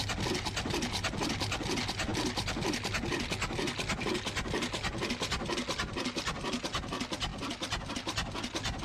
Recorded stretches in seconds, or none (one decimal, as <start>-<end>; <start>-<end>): 0.0-8.8